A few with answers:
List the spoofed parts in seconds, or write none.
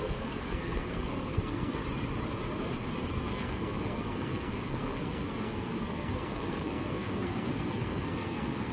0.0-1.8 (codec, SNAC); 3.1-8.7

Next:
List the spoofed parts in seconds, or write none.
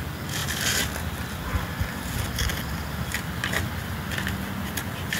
none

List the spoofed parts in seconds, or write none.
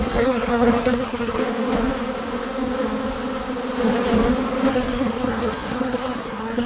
0.0-1.4 (codec, SNAC); 4.7-6.7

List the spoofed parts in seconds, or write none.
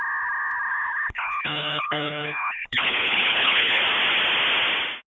0.7-3.8 (codec, HILCodec)